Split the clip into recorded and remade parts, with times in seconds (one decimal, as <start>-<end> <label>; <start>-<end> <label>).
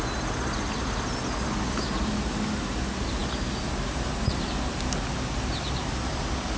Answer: 0.0-6.6 recorded